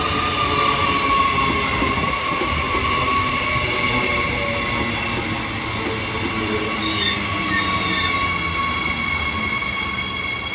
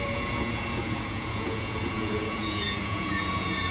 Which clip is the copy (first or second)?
second